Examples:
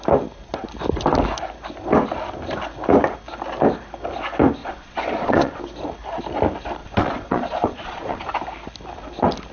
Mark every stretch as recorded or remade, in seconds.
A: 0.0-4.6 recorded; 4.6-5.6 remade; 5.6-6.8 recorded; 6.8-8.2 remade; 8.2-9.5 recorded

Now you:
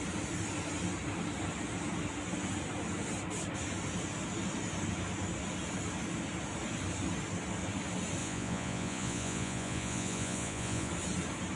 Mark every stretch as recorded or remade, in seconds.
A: 0.0-8.2 recorded; 8.2-10.9 remade; 10.9-11.6 recorded

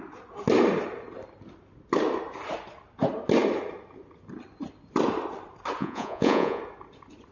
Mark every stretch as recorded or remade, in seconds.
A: 0.0-5.8 recorded; 5.8-6.6 remade; 6.6-7.3 recorded

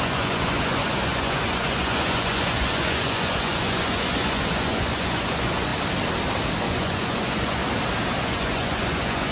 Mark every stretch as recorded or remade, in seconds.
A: 0.0-5.7 remade; 5.7-6.6 recorded; 6.6-7.6 remade; 7.6-8.2 recorded; 8.2-9.3 remade

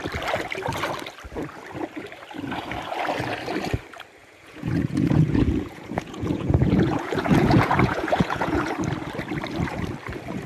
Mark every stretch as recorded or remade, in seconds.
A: 0.0-4.2 recorded; 4.2-8.7 remade; 8.7-10.5 recorded

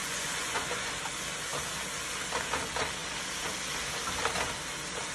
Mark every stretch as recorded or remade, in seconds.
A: 0.0-0.9 remade; 0.9-5.1 recorded

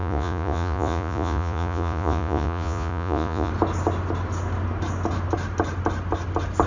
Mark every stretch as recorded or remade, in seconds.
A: 0.0-3.5 remade; 3.5-6.7 recorded